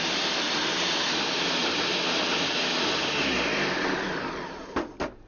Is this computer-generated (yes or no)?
no